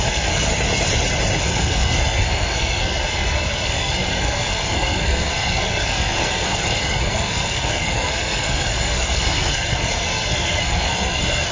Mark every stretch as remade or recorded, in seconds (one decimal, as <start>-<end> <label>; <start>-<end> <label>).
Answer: 0.0-0.5 remade; 0.5-1.4 recorded; 1.4-11.5 remade